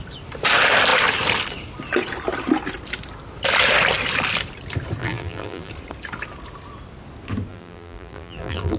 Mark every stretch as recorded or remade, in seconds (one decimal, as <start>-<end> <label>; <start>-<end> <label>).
0.0-5.0 recorded; 5.0-5.7 remade; 5.7-7.5 recorded; 7.5-8.8 remade